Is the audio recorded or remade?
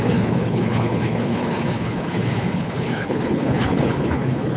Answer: remade